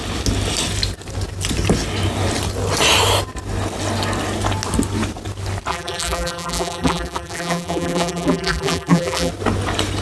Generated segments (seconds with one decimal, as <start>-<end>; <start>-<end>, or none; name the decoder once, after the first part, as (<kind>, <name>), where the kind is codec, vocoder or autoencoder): 5.7-9.3 (vocoder, BigVGAN v2)